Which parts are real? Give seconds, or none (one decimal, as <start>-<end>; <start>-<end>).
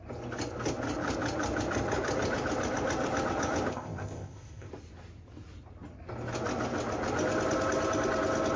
0.0-3.7; 4.7-8.6